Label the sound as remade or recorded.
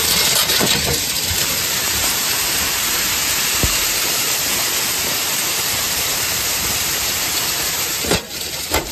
remade